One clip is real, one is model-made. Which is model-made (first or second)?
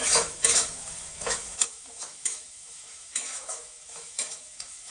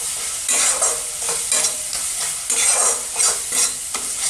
first